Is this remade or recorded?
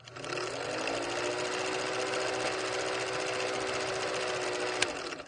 recorded